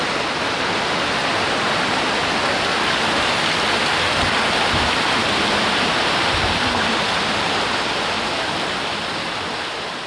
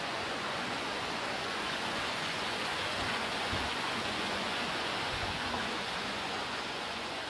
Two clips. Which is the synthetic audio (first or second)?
second